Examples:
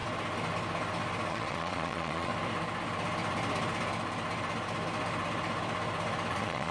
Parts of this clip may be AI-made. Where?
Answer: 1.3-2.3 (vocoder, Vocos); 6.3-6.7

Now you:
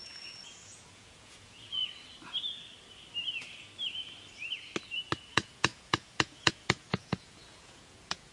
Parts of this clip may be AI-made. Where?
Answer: 0.0-1.8 (vocoder, Vocos); 5.3-8.3

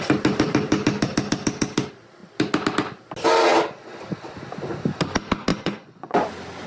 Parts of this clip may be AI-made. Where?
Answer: 5.5-6.3 (vocoder, Vocos)

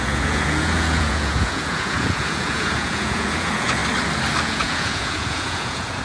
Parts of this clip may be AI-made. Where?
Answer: 0.0-3.8 (vocoder, Vocos); 4.4-6.0

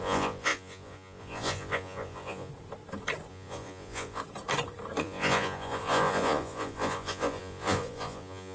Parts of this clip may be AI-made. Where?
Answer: 0.0-2.5 (vocoder, Vocos); 3.3-4.2; 5.0-8.5

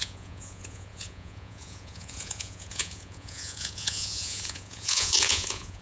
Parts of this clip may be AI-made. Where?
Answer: 0.0-5.8 (vocoder, Vocos)